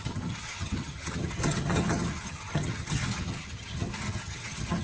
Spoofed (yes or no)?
yes